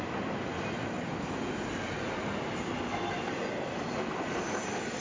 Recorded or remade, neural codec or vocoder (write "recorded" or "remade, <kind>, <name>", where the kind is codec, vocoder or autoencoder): recorded